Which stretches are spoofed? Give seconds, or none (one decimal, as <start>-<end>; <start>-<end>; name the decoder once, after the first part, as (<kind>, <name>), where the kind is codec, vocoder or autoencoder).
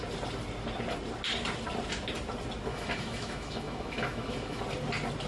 2.7-4.6 (autoencoder, DAC-VAE)